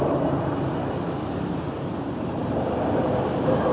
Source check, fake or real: fake